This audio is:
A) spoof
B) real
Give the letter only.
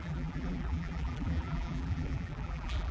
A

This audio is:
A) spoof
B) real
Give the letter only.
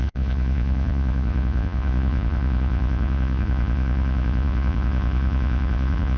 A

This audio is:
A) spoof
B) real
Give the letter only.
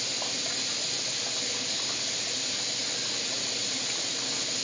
B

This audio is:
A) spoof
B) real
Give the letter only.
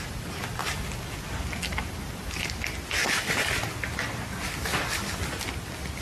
B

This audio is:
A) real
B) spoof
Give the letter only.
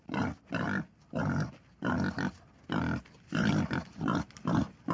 A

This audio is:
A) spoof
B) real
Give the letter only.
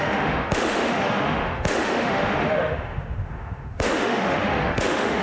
A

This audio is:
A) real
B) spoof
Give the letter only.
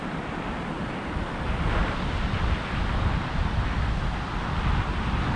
A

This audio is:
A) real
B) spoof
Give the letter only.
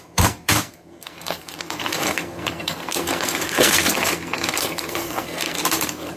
B